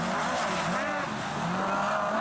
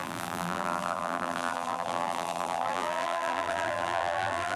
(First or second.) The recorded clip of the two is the first